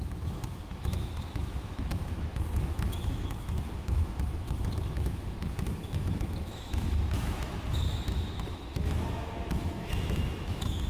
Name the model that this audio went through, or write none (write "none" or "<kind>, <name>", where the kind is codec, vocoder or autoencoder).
autoencoder, DAC-VAE